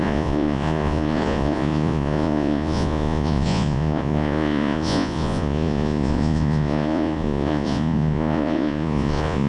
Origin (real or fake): fake